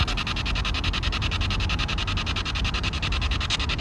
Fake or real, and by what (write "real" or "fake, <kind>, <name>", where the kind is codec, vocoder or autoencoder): real